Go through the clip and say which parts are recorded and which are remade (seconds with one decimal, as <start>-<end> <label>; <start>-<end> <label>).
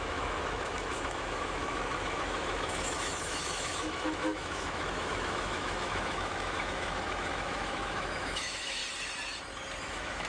0.0-8.8 remade; 8.8-9.8 recorded; 9.8-10.3 remade